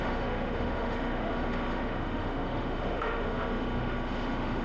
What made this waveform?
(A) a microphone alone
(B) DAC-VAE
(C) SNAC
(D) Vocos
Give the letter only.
B